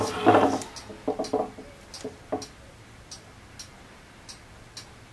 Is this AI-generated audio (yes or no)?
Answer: no